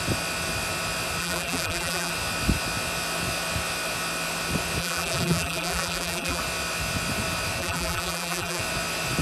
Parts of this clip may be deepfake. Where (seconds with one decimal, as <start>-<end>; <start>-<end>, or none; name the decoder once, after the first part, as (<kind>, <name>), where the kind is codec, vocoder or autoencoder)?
1.2-2.1 (vocoder, BigVGAN v2); 4.8-6.4; 7.6-8.6